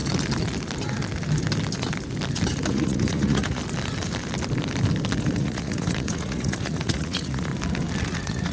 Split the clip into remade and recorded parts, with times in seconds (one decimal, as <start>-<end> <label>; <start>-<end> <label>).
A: 0.0-2.7 recorded; 2.7-3.6 remade; 3.6-5.2 recorded; 5.2-7.5 remade; 7.5-8.0 recorded; 8.0-8.5 remade